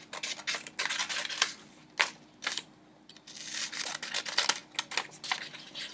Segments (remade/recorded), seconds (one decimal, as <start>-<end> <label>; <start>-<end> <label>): 0.0-5.9 recorded